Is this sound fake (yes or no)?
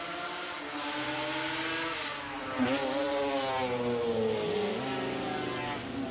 no